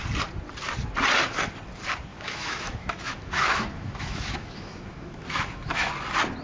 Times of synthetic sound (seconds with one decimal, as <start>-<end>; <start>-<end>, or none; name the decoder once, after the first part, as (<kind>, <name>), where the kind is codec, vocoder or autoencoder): 2.1-5.9 (autoencoder, DAC-VAE)